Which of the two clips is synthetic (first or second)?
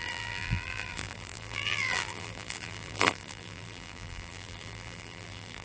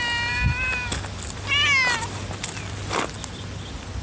first